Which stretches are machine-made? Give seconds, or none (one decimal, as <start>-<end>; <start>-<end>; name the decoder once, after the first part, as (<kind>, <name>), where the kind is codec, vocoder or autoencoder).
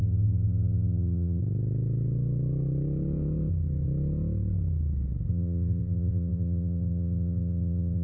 0.0-1.4 (vocoder, BigVGAN v2); 5.3-8.0